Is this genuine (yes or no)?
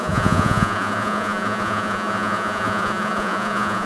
no